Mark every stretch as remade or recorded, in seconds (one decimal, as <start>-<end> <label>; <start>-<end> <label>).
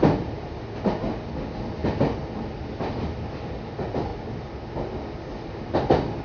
0.0-6.2 recorded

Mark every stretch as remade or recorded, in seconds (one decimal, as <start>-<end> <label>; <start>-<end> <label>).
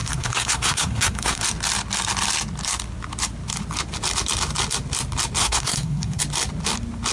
0.0-1.4 remade; 1.4-5.4 recorded; 5.4-6.2 remade; 6.2-7.1 recorded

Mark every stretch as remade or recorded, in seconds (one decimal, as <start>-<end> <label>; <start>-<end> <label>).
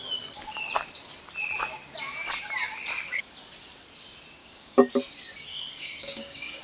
0.0-4.4 recorded; 4.4-4.9 remade; 4.9-5.5 recorded; 5.5-6.6 remade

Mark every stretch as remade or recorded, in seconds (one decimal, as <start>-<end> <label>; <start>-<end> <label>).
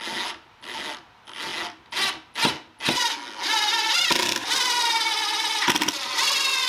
0.0-6.7 recorded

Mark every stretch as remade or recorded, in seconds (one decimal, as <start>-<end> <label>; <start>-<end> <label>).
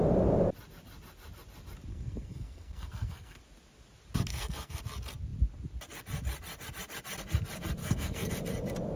0.0-1.9 recorded; 1.9-3.4 remade; 3.4-4.3 recorded; 4.3-4.8 remade; 4.8-7.8 recorded; 7.8-8.3 remade; 8.3-9.0 recorded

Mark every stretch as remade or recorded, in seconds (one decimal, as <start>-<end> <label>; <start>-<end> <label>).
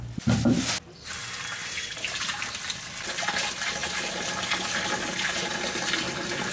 0.0-1.6 recorded; 1.6-2.3 remade; 2.3-6.5 recorded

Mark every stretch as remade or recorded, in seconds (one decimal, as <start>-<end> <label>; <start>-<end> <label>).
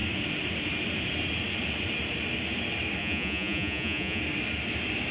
0.0-3.0 recorded; 3.0-4.2 remade; 4.2-5.1 recorded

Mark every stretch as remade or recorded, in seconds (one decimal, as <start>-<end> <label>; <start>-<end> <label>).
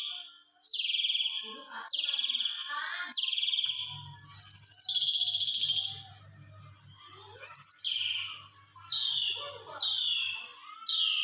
0.0-11.2 recorded